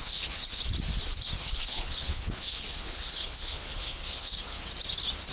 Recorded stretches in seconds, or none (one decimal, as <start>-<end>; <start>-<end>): 0.6-1.4; 4.6-5.3